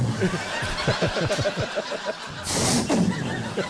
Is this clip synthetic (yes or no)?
no